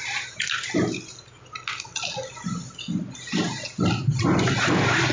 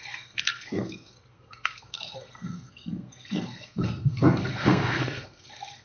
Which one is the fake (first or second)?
second